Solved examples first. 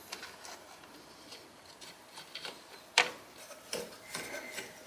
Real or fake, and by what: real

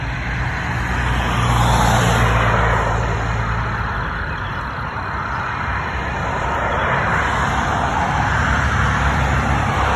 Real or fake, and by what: real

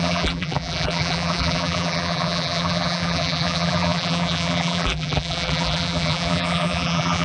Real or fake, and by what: fake, vocoder, BigVGAN v2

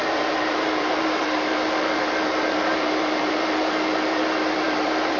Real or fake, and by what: fake, vocoder, BigVGAN v2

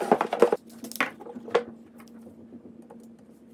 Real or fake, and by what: real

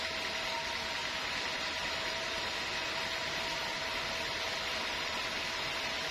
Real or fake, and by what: real